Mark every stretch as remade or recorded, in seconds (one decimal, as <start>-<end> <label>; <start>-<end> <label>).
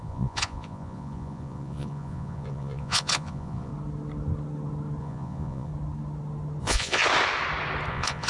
0.0-3.7 remade; 3.7-5.0 recorded; 5.0-5.7 remade; 5.7-6.6 recorded; 6.6-7.0 remade; 7.0-7.9 recorded; 7.9-8.3 remade